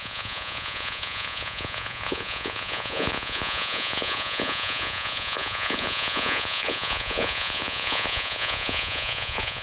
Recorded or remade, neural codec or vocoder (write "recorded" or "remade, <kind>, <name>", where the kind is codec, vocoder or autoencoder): remade, vocoder, Vocos